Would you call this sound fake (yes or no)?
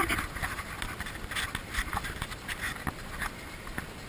yes